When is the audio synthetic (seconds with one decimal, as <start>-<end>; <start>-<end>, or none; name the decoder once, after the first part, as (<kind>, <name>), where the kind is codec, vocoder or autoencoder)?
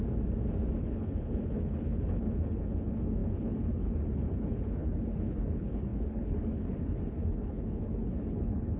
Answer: 0.8-8.8 (codec, HILCodec)